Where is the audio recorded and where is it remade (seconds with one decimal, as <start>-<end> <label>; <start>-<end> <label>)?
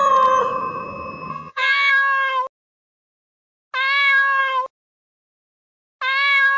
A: 0.0-1.3 recorded; 1.3-1.9 remade; 1.9-6.6 recorded